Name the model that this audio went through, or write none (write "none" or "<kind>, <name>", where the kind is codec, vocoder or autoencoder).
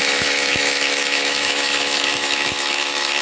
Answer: autoencoder, DAC-VAE